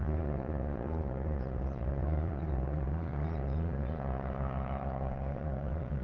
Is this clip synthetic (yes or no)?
yes